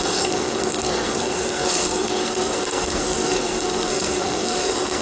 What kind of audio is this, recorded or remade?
remade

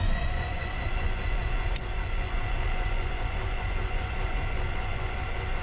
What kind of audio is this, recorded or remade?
remade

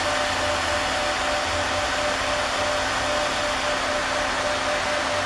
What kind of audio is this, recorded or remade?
recorded